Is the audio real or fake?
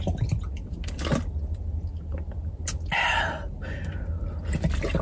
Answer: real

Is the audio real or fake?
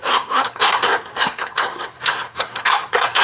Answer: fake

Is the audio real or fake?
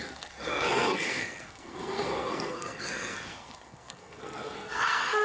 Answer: fake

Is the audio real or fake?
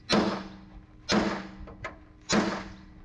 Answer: real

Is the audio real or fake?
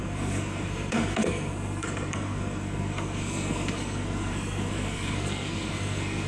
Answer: fake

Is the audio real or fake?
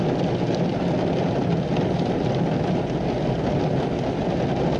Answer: real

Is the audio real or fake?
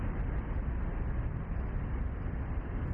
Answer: real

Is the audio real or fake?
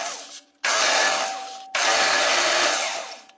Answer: real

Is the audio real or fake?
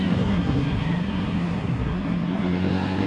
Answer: fake